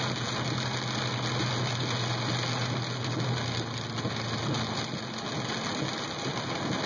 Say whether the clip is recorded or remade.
recorded